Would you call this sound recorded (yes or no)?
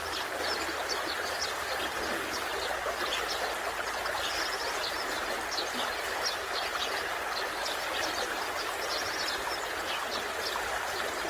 yes